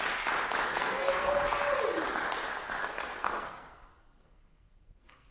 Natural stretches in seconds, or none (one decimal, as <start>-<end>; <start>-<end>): 0.0-0.7; 1.4-2.8